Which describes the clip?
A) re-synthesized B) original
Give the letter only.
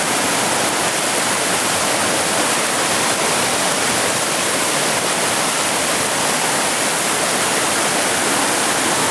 B